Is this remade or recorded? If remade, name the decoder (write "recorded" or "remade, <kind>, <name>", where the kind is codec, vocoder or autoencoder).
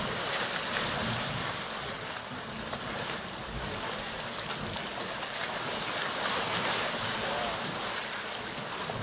recorded